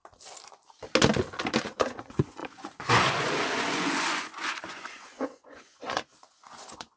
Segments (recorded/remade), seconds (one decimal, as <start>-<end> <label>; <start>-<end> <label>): 0.0-1.6 recorded; 1.6-7.0 remade